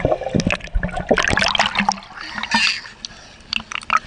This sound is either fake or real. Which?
real